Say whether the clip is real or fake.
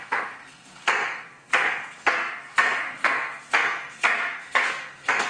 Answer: fake